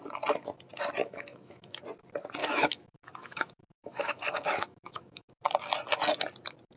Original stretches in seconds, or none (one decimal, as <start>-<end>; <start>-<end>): 0.0-1.0; 1.8-2.4; 5.3-6.8